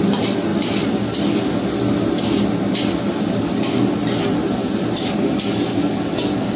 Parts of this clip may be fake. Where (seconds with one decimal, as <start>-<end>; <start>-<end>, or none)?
none